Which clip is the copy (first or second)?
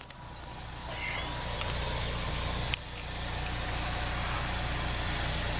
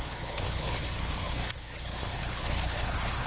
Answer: second